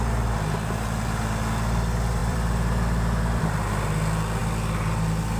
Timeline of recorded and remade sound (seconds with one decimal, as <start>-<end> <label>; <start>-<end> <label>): 0.0-5.4 remade